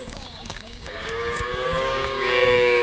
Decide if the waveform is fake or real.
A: fake